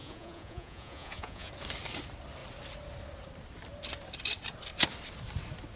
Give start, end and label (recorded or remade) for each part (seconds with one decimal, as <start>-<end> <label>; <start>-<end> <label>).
0.0-1.5 remade; 1.5-5.8 recorded